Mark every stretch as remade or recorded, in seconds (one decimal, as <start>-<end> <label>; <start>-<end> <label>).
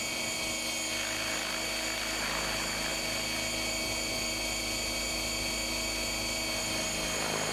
0.0-7.5 recorded